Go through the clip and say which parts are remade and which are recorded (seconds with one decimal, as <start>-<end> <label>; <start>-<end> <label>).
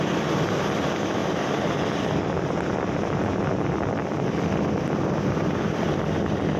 0.0-6.6 recorded